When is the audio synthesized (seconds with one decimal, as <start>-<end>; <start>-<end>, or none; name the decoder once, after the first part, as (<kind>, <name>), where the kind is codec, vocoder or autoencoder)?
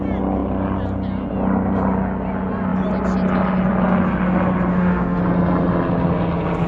4.7-5.2 (autoencoder, DAC-VAE)